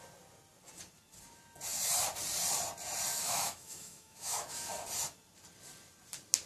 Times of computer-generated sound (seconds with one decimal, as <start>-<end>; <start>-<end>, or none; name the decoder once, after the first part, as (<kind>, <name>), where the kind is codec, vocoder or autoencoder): 3.1-4.7 (autoencoder, DAC-VAE)